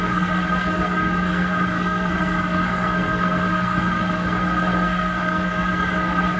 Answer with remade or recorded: remade